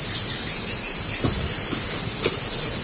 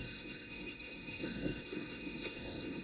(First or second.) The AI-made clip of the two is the second